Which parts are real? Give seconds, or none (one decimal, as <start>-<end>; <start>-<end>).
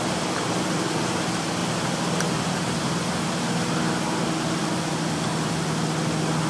0.0-6.5